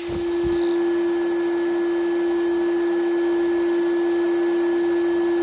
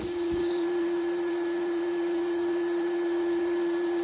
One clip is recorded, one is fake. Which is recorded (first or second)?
first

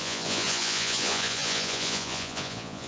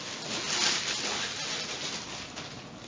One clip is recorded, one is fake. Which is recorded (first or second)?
second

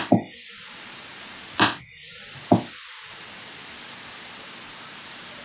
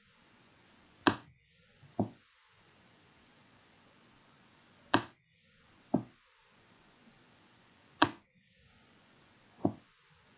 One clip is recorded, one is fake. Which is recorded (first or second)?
first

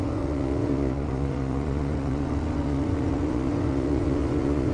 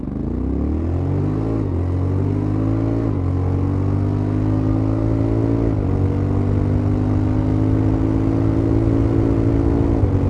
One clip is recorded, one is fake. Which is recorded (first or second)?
second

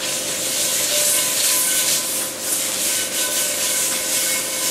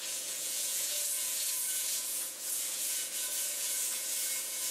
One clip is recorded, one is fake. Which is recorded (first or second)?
first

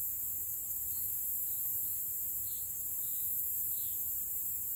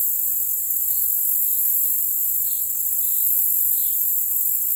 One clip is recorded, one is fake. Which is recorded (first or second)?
second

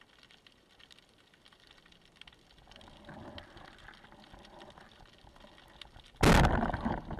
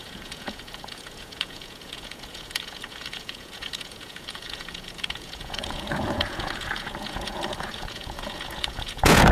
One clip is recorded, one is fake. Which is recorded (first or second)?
first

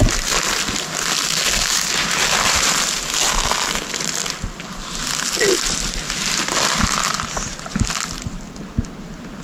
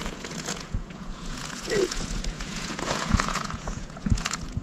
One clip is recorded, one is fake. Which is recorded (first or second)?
first